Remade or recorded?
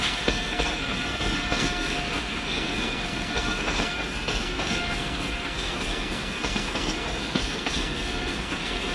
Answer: remade